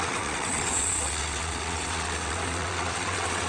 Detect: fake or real fake